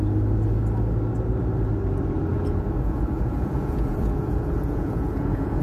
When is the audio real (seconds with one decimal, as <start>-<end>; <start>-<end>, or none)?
0.0-2.3